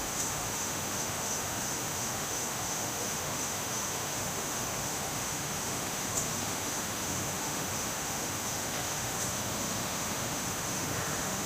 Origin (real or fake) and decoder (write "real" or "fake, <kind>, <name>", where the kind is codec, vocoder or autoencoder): fake, autoencoder, DAC-VAE